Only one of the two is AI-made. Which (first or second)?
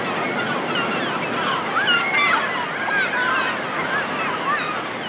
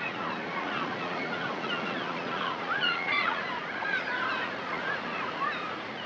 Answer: second